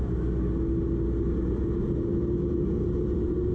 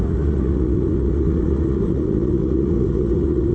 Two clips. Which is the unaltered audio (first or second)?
first